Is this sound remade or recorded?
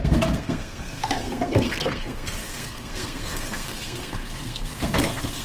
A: remade